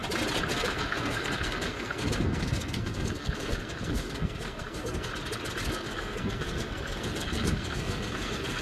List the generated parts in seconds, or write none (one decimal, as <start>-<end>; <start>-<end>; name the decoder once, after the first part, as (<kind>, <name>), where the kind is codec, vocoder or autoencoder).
0.5-5.1 (codec, SNAC); 5.7-8.6